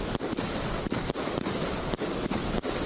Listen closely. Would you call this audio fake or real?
real